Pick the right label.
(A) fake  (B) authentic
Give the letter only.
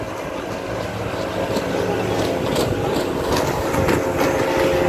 B